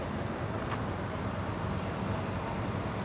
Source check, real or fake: real